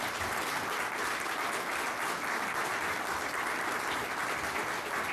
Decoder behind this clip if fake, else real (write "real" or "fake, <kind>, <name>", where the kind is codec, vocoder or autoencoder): real